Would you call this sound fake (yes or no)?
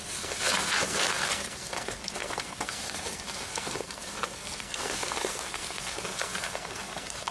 yes